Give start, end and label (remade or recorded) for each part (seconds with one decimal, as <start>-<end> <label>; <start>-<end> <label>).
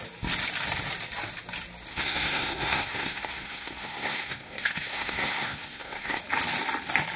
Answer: 0.0-1.9 recorded; 1.9-6.2 remade; 6.2-7.2 recorded